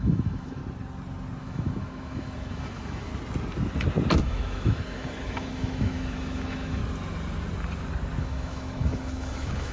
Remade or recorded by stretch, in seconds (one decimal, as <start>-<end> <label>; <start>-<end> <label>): 0.0-0.6 remade; 0.6-1.4 recorded; 1.4-3.1 remade; 3.1-4.2 recorded; 4.2-6.8 remade; 6.8-8.2 recorded; 8.2-9.7 remade